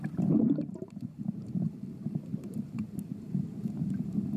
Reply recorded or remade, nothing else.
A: remade